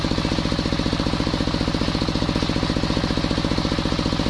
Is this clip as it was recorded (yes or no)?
yes